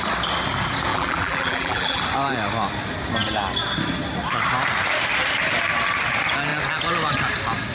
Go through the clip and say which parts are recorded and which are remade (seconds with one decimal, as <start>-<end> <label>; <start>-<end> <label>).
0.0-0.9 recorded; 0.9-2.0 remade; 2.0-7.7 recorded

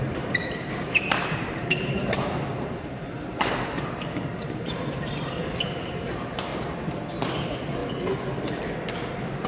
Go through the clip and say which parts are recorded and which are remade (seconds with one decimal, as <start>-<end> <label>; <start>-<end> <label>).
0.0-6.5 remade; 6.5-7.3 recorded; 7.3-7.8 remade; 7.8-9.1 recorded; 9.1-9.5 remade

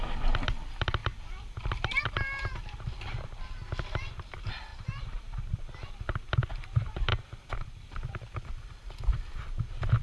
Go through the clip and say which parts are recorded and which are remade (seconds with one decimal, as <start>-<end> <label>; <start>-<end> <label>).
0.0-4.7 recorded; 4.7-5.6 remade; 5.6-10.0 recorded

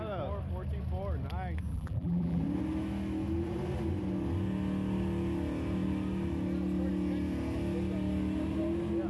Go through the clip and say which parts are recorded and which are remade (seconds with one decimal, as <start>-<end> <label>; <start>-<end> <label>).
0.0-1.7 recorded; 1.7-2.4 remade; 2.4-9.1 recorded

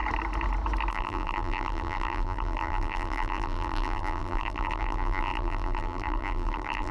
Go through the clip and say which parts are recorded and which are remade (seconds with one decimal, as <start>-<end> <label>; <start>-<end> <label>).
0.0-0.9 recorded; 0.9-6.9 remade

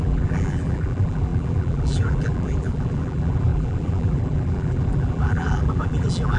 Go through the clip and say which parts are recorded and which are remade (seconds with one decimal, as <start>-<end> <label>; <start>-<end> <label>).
0.0-6.4 remade

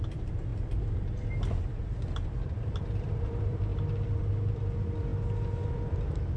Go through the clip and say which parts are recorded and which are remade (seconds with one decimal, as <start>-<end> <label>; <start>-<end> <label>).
0.0-0.5 remade; 0.5-2.0 recorded; 2.0-3.7 remade; 3.7-4.2 recorded; 4.2-5.1 remade; 5.1-5.7 recorded; 5.7-6.4 remade

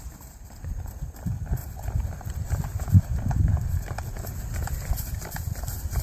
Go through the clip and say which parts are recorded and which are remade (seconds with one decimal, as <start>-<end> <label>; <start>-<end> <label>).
0.0-6.0 remade